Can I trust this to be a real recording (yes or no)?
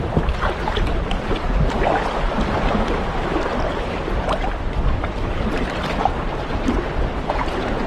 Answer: yes